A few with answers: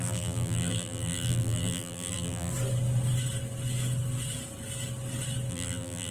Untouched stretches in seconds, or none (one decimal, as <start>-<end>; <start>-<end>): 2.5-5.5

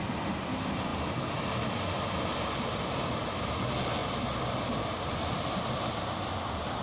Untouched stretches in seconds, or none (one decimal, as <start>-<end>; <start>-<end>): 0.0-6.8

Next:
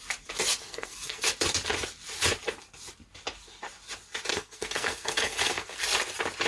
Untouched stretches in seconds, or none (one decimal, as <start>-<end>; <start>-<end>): 0.0-0.6; 1.3-4.3; 5.8-6.5

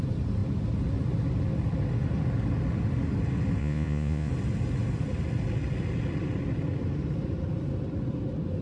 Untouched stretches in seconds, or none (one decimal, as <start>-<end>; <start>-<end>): 0.0-3.6; 4.3-8.6